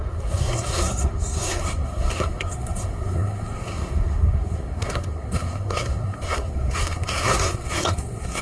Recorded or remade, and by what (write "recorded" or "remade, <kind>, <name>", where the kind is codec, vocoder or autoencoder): remade, codec, SNAC